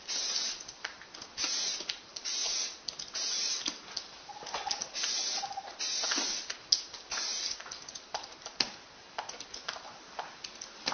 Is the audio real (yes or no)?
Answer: yes